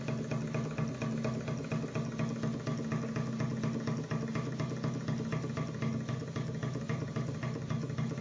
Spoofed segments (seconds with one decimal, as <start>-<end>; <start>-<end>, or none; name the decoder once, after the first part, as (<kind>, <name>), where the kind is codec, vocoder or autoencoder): none